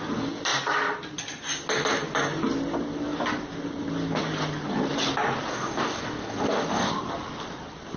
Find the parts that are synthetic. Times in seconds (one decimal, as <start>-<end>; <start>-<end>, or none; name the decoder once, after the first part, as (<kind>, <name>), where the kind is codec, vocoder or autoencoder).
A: 5.5-6.9 (codec, DAC)